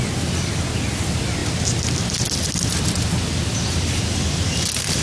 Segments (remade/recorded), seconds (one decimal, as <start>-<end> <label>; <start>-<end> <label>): 0.0-5.0 recorded